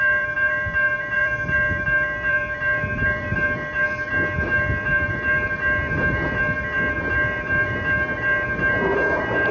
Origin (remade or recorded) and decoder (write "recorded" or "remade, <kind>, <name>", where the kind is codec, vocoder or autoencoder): remade, vocoder, BigVGAN v2